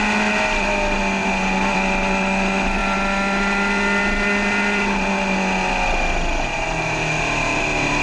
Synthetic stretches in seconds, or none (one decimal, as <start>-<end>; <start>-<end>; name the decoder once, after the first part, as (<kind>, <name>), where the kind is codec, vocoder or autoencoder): none